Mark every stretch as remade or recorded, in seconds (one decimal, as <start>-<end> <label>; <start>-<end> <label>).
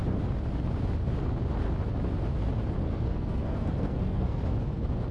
0.0-2.8 recorded; 2.8-4.4 remade; 4.4-5.1 recorded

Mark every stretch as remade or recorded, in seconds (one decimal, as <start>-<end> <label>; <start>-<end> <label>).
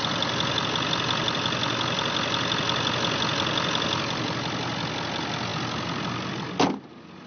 0.0-7.3 recorded